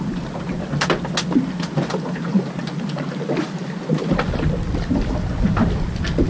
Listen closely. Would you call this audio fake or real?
real